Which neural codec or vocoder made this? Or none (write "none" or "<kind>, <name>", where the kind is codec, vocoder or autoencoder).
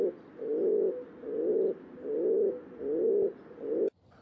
none